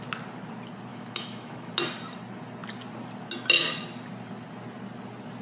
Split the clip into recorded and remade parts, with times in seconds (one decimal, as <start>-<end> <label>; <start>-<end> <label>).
0.0-0.9 recorded; 0.9-1.7 remade; 1.7-5.4 recorded